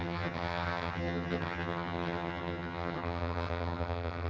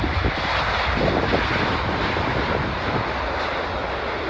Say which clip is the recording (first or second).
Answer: second